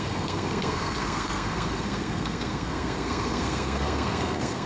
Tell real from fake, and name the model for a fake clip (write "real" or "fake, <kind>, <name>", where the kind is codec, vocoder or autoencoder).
fake, codec, SNAC